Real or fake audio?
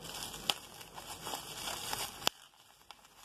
real